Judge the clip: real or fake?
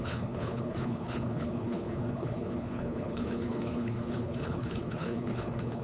fake